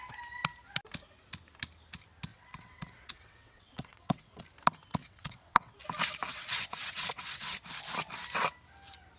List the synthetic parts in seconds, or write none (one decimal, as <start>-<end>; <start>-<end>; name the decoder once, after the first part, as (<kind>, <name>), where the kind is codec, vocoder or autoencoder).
2.3-4.4 (vocoder, WaveNeXt); 5.0-5.7; 6.3-7.4